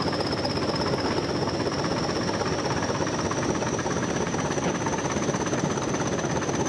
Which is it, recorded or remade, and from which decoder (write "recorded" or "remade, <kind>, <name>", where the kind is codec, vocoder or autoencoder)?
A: remade, vocoder, BigVGAN v2